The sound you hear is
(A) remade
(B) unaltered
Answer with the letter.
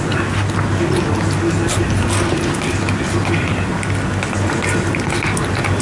B